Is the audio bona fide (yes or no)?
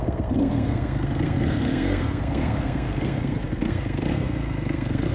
no